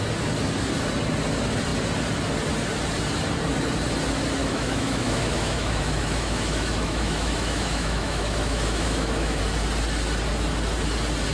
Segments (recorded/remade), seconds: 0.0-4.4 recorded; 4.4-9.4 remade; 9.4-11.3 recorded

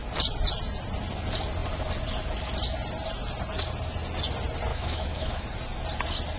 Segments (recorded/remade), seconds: 0.0-4.7 recorded; 4.7-5.4 remade; 5.4-6.4 recorded

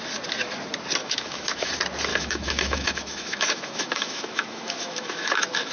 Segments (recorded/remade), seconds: 0.0-1.0 recorded; 1.0-1.7 remade; 1.7-2.1 recorded; 2.1-5.7 remade

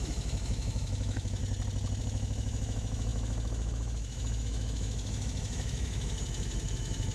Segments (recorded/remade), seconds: 0.0-1.4 remade; 1.4-2.0 recorded; 2.0-7.1 remade

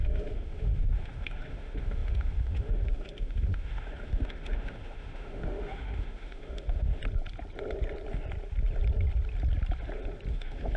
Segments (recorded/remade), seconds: 0.0-7.0 remade; 7.0-10.3 recorded; 10.3-10.8 remade

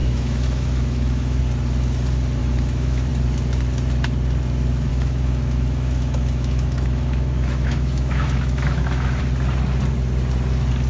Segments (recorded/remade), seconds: 0.0-1.4 remade; 1.4-2.4 recorded; 2.4-3.1 remade; 3.1-4.9 recorded; 4.9-9.2 remade; 9.2-10.9 recorded